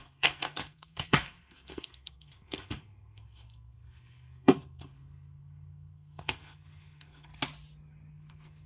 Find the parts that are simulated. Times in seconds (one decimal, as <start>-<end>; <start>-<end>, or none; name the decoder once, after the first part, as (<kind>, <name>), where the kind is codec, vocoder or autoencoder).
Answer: 0.0-7.3 (codec, SNAC); 8.1-8.7